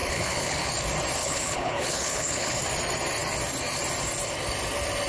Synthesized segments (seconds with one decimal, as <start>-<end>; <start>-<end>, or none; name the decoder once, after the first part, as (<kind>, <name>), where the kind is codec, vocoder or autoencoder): 0.0-0.7 (codec, HILCodec); 1.2-2.6